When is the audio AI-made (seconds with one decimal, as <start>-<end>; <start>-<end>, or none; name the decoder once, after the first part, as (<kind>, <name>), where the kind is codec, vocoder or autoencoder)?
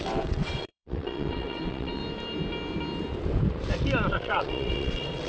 0.0-2.0 (vocoder, WaveNeXt); 4.1-5.3